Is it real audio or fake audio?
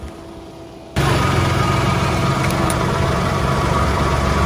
real